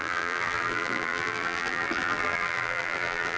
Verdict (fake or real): fake